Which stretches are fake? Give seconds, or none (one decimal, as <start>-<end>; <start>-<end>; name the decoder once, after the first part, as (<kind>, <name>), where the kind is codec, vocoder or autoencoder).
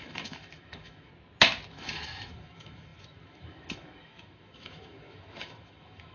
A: 0.0-1.1 (autoencoder, DAC-VAE); 1.7-6.1